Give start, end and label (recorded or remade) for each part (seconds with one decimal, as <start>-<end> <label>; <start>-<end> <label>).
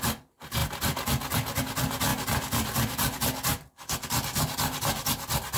0.0-5.6 recorded